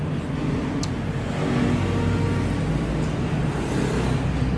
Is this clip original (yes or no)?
yes